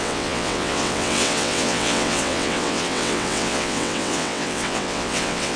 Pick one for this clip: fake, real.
fake